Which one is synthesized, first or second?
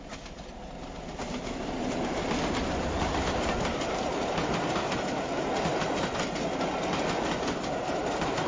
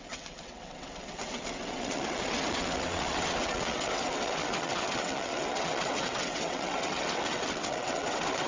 second